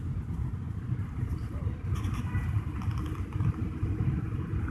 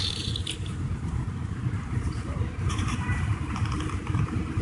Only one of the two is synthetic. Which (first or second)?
second